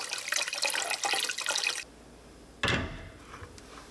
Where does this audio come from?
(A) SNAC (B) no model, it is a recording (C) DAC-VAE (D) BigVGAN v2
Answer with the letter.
B